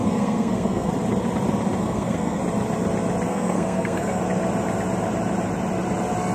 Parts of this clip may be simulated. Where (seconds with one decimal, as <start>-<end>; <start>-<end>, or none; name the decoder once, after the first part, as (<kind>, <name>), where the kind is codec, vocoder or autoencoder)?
0.0-0.9 (codec, SNAC); 1.8-2.4; 3.3-4.2